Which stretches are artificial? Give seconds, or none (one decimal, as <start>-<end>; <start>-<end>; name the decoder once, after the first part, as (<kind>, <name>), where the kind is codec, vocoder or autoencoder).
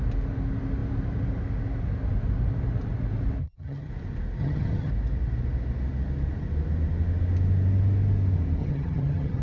3.4-3.9 (vocoder, HiFi-GAN); 4.4-4.9; 8.6-9.4